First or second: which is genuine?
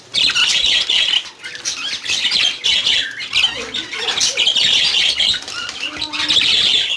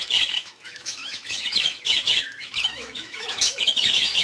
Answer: first